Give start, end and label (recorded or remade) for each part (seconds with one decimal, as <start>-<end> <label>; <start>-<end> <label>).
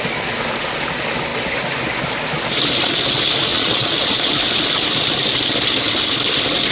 0.0-3.5 recorded; 3.5-4.3 remade; 4.3-6.7 recorded